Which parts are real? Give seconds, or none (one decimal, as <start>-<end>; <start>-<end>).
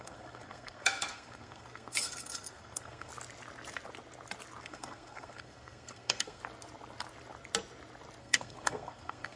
3.1-4.6; 6.4-8.2